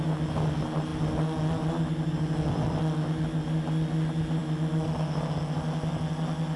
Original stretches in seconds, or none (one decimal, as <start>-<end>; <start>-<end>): 0.0-6.6